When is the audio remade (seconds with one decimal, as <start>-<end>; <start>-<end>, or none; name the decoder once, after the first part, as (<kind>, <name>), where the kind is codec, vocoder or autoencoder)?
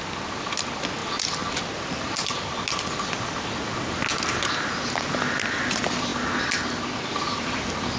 none